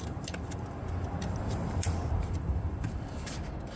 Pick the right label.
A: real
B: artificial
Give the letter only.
B